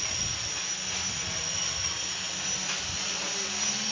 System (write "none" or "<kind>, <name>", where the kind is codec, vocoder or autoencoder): none